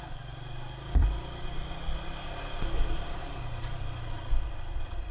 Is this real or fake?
real